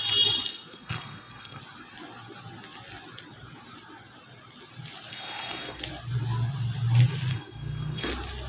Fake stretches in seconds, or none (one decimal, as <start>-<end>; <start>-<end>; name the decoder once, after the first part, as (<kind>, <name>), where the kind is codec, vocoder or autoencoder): 0.5-1.6 (codec, SNAC); 5.1-5.8; 7.3-8.1